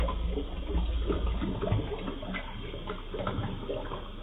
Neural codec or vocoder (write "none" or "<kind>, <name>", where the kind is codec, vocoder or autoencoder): none